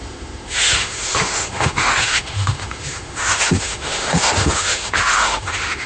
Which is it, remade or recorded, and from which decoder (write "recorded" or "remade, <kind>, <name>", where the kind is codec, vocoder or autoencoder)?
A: remade, autoencoder, DAC-VAE